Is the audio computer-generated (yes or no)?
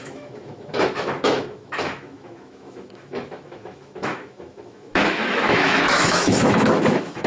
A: yes